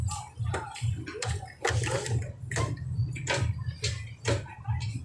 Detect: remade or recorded recorded